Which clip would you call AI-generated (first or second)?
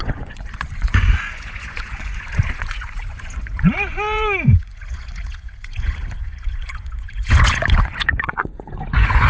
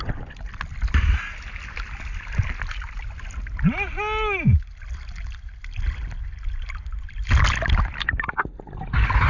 first